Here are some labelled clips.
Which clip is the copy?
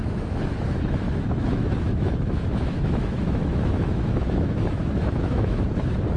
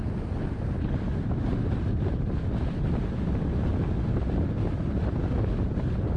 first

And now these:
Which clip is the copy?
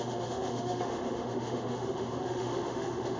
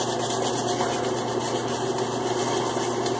first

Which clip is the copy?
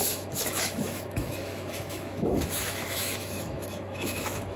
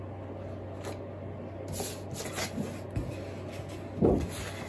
first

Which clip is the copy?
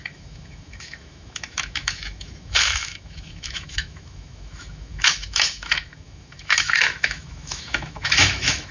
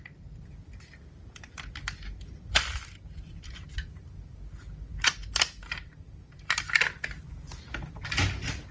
first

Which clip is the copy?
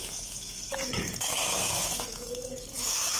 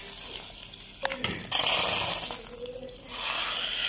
first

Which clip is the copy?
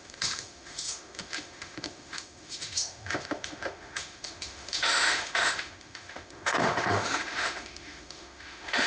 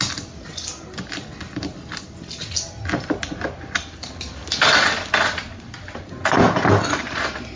first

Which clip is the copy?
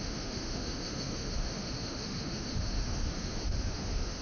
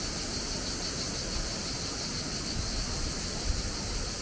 first